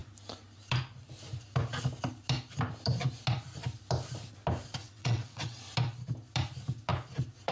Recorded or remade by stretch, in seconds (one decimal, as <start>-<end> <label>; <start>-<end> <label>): 0.0-4.8 recorded; 4.8-5.6 remade; 5.6-7.5 recorded